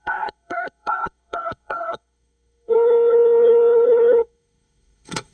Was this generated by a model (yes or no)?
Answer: yes